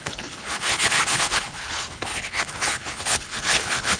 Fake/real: fake